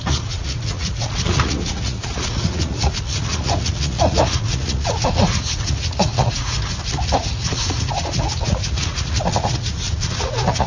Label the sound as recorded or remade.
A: remade